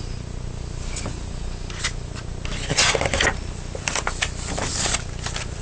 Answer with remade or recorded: recorded